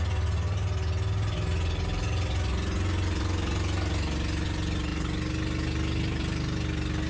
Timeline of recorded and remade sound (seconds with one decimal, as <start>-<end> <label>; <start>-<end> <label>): 0.0-7.1 recorded